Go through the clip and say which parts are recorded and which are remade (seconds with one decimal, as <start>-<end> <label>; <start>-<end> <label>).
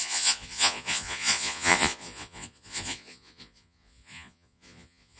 0.0-5.2 remade